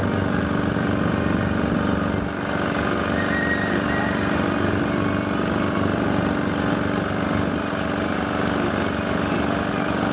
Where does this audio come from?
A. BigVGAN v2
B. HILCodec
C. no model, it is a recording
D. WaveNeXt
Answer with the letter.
C